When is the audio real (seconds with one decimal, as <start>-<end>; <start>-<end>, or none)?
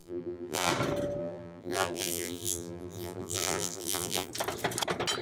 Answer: 0.7-1.2; 4.3-5.2